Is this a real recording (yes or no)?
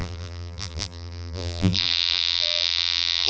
no